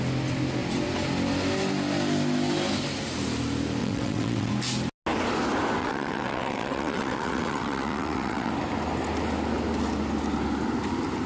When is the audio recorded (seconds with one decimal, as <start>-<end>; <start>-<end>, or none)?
0.0-3.8; 4.5-5.8; 8.5-11.3